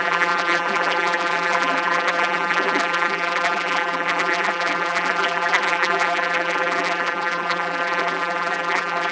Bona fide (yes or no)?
no